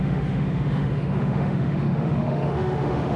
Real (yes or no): no